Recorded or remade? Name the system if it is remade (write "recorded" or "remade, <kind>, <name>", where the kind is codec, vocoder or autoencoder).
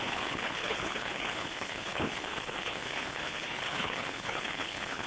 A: remade, codec, HILCodec